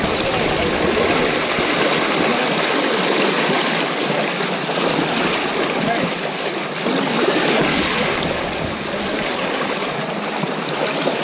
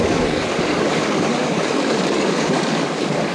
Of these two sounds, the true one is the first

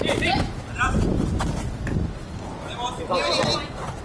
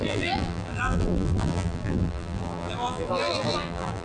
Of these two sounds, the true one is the first